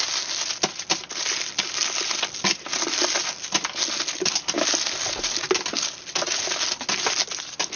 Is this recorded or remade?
recorded